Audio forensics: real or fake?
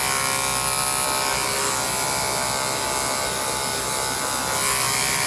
real